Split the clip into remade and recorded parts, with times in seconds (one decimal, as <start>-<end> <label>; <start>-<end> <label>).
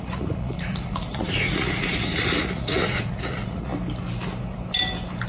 0.0-3.7 remade; 3.7-5.3 recorded